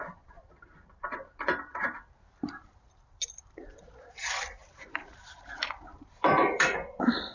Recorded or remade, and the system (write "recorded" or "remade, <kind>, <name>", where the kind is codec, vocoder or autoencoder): remade, vocoder, BigVGAN v2